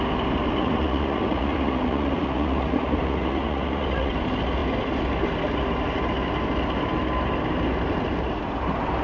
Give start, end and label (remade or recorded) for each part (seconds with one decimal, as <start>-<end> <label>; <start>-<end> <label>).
0.0-0.6 recorded; 0.6-4.1 remade; 4.1-9.0 recorded